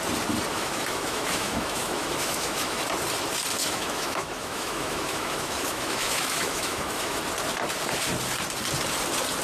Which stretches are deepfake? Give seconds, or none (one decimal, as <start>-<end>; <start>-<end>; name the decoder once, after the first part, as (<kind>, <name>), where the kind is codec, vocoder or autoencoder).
0.5-2.8 (autoencoder, DAC-VAE); 3.6-7.2